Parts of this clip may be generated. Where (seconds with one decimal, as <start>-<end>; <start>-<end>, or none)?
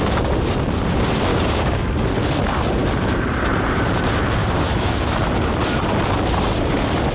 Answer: 1.3-1.9; 4.4-5.0